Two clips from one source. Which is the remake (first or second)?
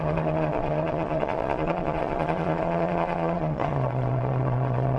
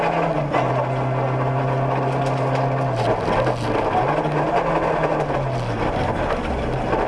first